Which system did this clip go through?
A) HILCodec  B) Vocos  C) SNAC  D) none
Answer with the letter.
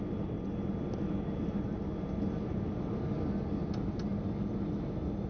D